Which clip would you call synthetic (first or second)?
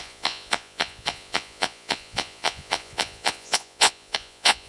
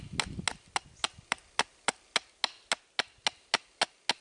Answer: first